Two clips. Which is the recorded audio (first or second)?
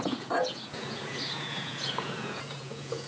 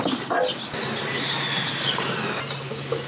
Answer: second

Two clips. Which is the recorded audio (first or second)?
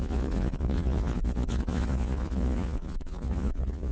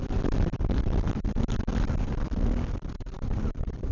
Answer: second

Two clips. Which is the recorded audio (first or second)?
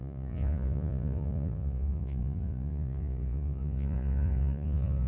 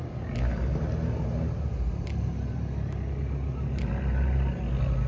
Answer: second